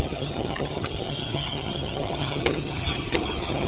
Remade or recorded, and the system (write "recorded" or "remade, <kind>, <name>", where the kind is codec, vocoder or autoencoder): remade, vocoder, HiFi-GAN